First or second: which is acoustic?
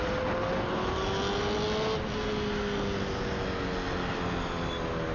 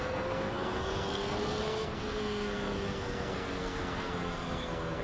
first